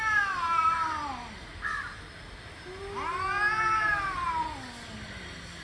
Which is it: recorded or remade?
recorded